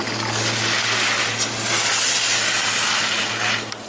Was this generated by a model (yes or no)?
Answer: no